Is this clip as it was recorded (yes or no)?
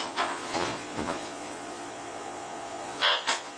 no